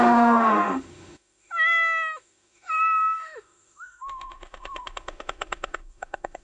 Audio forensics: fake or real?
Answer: fake